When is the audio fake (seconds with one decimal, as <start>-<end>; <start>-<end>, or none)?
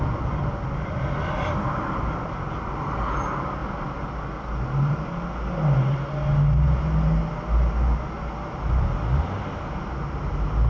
none